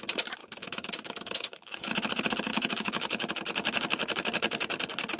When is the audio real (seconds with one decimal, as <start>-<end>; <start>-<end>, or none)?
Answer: 0.0-0.4; 1.9-2.5; 3.3-5.2

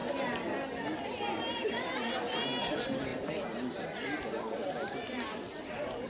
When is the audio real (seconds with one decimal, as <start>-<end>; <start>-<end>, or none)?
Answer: 0.0-3.1

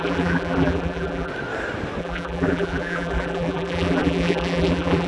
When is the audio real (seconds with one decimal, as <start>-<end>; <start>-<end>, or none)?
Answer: 1.3-2.0

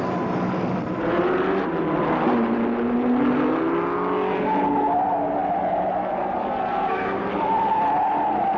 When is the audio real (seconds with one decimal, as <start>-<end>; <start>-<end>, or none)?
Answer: 0.0-6.7; 7.2-8.6